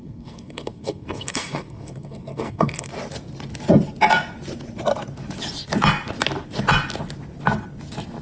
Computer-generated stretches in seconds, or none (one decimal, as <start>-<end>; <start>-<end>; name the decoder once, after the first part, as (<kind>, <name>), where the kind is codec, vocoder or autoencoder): 0.0-2.9 (codec, SNAC)